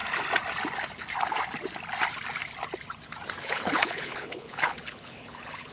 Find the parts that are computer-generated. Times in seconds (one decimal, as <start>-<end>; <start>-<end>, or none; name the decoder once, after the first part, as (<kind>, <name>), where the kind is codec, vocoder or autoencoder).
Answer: 3.4-5.7 (codec, HILCodec)